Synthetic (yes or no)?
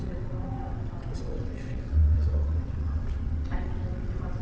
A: yes